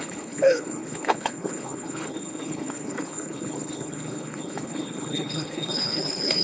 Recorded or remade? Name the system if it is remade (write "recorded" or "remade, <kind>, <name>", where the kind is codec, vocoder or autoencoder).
remade, codec, HILCodec